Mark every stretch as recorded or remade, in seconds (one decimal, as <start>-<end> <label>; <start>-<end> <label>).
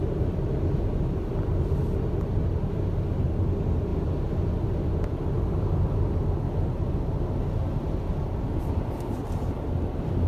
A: 0.0-10.3 recorded